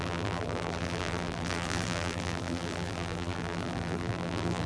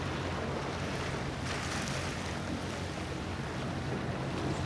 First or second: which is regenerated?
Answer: first